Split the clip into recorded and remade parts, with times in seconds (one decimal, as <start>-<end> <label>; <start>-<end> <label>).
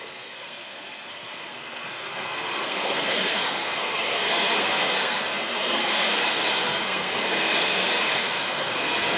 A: 0.0-9.2 remade